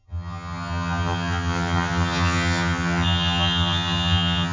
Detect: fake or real fake